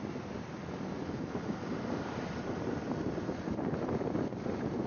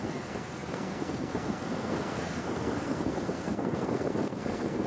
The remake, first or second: second